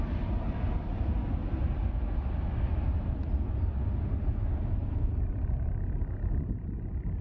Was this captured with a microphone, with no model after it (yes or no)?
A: yes